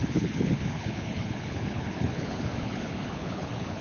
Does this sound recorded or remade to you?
remade